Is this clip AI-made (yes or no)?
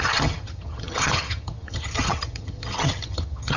yes